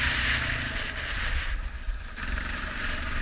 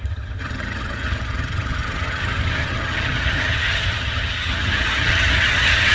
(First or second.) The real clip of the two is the first